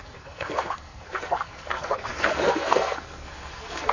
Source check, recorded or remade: remade